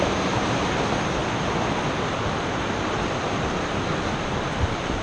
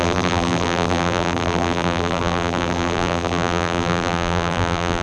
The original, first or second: first